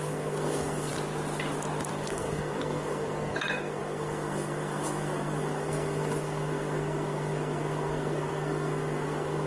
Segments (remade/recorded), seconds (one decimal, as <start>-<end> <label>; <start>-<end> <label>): 0.0-0.9 remade; 0.9-1.9 recorded; 1.9-9.5 remade